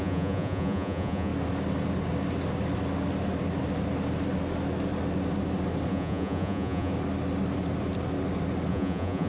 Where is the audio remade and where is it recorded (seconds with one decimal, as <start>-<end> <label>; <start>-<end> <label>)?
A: 0.0-1.3 remade; 1.3-5.9 recorded; 5.9-6.9 remade; 6.9-8.7 recorded; 8.7-9.3 remade